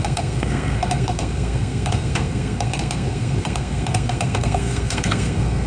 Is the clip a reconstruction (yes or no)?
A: yes